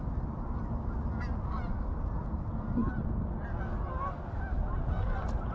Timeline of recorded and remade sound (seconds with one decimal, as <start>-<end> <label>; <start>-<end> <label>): 0.0-5.5 recorded